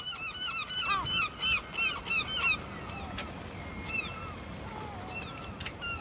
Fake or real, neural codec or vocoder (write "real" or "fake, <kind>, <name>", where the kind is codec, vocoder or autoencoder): real